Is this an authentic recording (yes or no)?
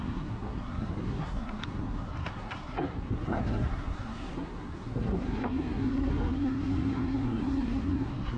no